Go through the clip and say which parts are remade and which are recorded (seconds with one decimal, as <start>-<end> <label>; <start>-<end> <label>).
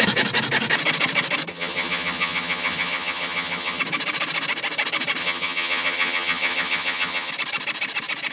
0.0-1.5 recorded; 1.5-3.8 remade; 3.8-5.2 recorded; 5.2-7.3 remade; 7.3-8.3 recorded